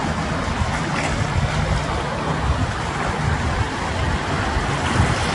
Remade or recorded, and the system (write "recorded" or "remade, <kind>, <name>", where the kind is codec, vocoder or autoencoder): recorded